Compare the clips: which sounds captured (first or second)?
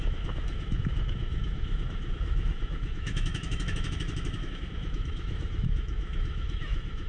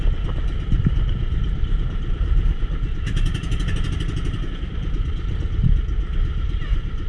second